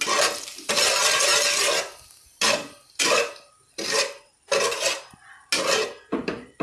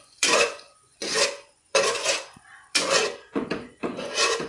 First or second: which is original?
first